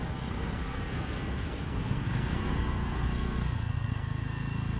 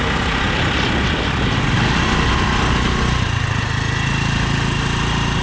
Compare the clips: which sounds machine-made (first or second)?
first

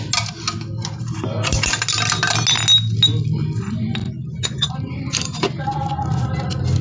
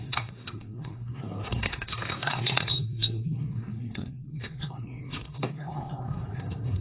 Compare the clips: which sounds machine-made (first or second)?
second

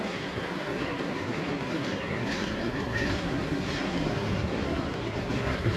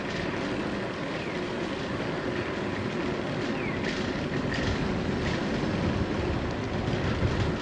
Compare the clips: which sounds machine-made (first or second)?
first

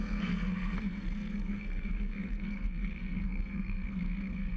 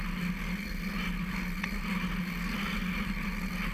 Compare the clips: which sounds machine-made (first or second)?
first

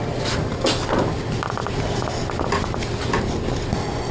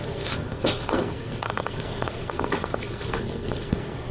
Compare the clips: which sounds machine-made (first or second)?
second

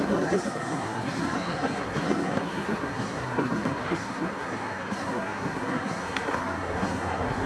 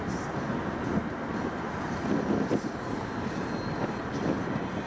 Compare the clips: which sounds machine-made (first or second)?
first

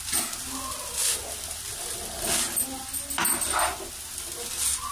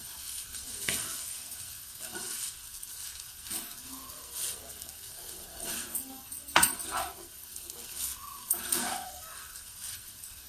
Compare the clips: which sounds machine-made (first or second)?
second